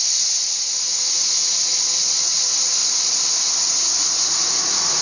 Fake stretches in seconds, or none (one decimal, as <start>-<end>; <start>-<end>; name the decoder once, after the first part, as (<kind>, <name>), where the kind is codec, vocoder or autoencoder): 0.0-2.8 (vocoder, Vocos); 3.7-5.0